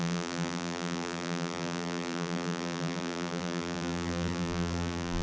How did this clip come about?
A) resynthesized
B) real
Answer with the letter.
A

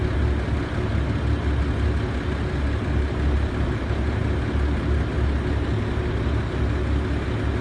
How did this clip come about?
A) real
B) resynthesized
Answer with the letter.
A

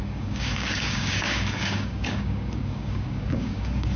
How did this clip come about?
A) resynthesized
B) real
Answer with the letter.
A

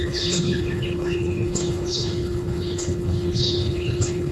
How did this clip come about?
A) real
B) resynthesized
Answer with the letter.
B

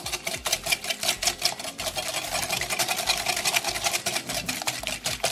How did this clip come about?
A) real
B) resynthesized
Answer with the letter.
A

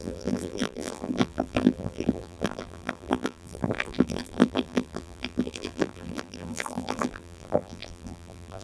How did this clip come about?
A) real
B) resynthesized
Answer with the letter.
B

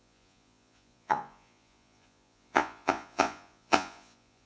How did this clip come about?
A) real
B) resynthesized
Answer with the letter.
B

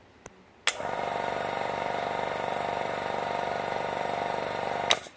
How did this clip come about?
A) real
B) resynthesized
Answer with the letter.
A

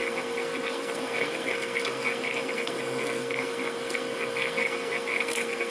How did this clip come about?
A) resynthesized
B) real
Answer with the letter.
A